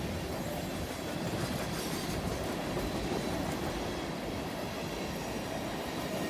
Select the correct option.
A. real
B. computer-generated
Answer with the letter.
A